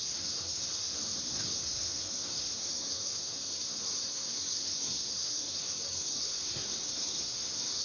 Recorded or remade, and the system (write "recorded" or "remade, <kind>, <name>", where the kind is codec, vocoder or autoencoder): remade, codec, SNAC